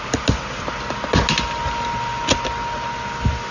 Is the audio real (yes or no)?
yes